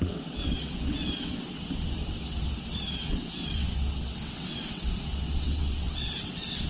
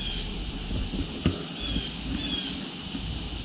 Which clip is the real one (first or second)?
second